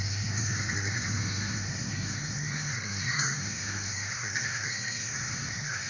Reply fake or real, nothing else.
fake